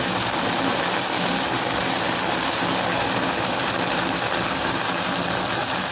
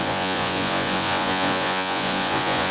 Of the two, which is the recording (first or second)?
first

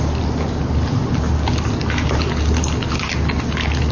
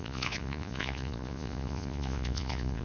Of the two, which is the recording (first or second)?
first